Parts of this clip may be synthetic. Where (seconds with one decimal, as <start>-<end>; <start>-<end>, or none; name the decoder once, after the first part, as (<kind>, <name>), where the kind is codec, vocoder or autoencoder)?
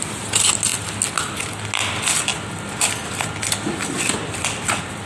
none